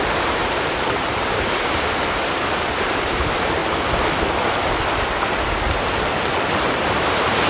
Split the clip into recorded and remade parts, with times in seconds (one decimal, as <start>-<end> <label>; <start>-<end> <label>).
0.0-3.6 remade; 3.6-7.0 recorded; 7.0-7.5 remade